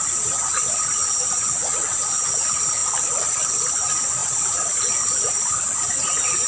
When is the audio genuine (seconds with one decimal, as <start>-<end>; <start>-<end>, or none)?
0.0-6.5